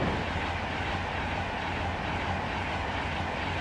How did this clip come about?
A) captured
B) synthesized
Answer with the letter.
A